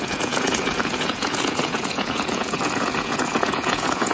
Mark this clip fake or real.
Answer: fake